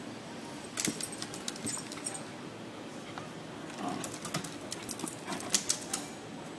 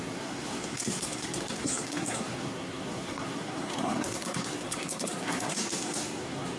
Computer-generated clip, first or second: second